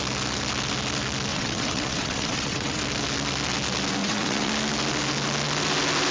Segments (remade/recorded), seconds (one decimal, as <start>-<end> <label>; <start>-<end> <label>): 0.0-1.3 recorded; 1.3-2.8 remade; 2.8-4.0 recorded; 4.0-4.5 remade; 4.5-6.1 recorded